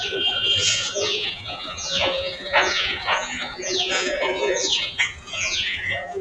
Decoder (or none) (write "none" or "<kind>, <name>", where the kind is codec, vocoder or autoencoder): vocoder, Vocos